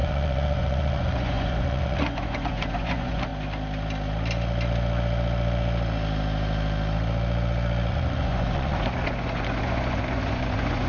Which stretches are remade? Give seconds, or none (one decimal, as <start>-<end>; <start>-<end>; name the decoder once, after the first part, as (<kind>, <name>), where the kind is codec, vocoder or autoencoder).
0.0-3.3 (vocoder, Vocos); 7.9-10.9

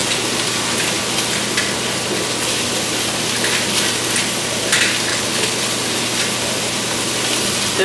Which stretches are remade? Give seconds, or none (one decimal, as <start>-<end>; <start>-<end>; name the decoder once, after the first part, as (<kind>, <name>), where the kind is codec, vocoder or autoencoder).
5.1-5.6 (codec, HILCodec)

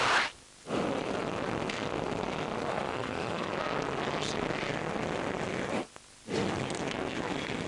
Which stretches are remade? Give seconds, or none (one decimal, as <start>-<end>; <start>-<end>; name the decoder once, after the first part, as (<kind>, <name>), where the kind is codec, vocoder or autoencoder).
2.7-3.5 (autoencoder, DAC-VAE)

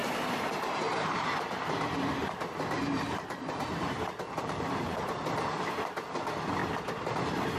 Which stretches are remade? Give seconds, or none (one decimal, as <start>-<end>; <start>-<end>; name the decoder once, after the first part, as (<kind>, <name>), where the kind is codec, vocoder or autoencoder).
0.0-1.3 (vocoder, BigVGAN v2); 2.2-5.1